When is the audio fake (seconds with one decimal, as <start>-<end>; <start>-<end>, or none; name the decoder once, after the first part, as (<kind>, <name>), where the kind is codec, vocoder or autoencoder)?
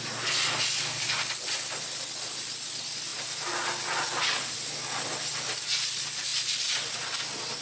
none